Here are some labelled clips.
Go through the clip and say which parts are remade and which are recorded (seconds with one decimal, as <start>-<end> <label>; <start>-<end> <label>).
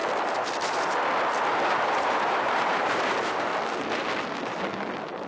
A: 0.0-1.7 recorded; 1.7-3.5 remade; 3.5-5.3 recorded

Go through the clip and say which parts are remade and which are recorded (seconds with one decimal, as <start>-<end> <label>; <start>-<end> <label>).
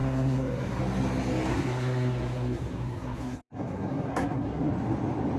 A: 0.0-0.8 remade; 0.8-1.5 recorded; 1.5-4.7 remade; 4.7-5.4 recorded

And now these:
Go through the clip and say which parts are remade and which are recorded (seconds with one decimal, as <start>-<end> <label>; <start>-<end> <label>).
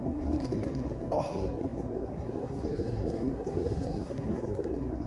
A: 0.0-5.1 remade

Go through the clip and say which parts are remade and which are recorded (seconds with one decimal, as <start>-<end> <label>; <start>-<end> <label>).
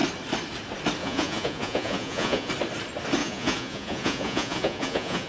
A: 0.0-1.0 recorded; 1.0-2.5 remade; 2.5-3.2 recorded; 3.2-5.3 remade